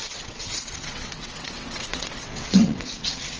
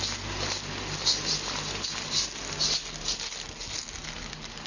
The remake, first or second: first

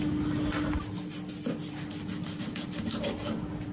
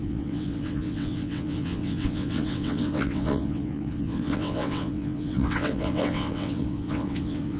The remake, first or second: second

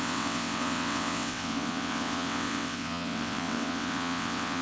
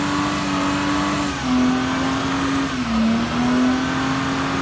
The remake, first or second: first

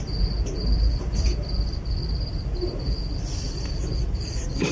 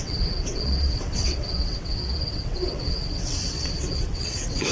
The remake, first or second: second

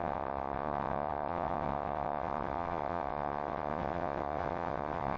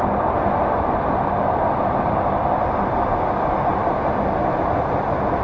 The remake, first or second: first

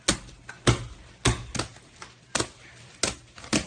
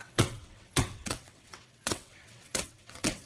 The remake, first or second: second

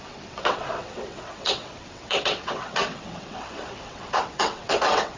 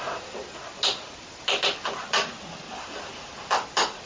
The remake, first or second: first